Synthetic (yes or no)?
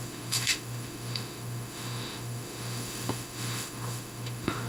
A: yes